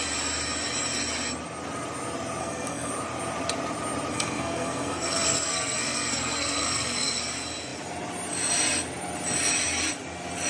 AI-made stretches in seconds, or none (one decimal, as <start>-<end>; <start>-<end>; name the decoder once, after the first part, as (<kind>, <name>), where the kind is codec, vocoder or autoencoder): 2.4-2.9 (codec, SNAC); 4.1-7.2